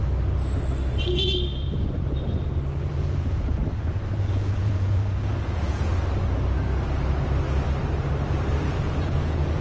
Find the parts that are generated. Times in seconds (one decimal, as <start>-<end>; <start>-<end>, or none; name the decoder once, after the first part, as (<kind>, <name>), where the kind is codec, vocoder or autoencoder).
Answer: 2.9-3.6 (vocoder, Vocos); 4.3-5.9; 8.6-9.6